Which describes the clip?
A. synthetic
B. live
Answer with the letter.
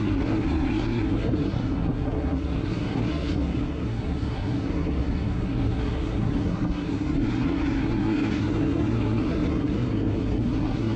A